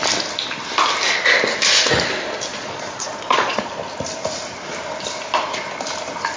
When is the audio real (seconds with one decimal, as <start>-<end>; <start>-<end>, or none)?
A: 0.0-2.5; 3.7-6.4